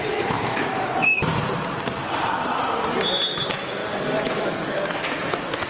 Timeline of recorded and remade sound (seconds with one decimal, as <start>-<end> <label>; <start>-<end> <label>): 0.0-1.1 remade; 1.1-3.3 recorded; 3.3-3.8 remade; 3.8-4.4 recorded; 4.4-5.7 remade